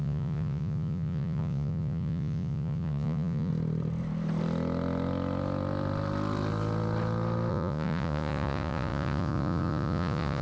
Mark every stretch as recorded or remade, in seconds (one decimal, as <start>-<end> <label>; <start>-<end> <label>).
0.0-3.5 remade; 3.5-7.5 recorded; 7.5-10.4 remade